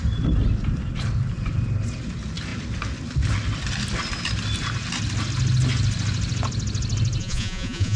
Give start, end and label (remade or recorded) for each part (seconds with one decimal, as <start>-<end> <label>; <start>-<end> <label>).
0.0-7.2 recorded; 7.2-8.0 remade